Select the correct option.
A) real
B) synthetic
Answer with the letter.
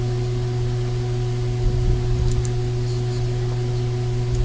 A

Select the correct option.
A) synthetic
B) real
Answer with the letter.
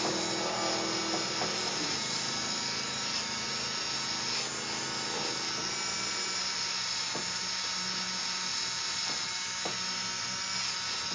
B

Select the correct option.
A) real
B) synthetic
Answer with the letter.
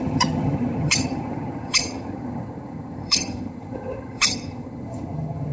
B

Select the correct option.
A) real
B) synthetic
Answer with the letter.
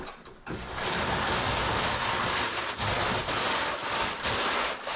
A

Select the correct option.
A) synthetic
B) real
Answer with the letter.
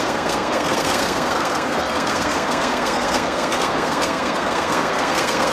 A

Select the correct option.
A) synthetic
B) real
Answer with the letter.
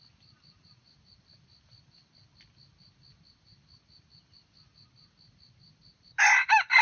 B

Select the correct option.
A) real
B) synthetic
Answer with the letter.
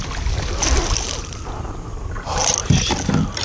A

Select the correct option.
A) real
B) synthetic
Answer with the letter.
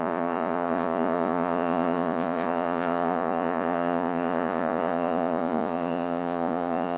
B